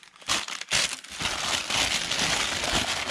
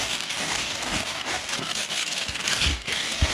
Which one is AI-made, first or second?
second